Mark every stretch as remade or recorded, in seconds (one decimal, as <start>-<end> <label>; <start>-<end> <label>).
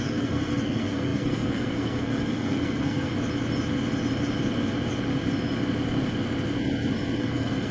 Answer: 0.0-3.1 remade; 3.1-7.2 recorded; 7.2-7.7 remade